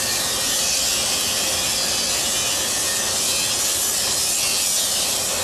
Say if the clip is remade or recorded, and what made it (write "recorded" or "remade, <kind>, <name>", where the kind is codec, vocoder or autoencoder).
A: recorded